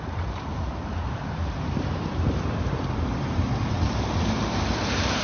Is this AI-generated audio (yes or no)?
yes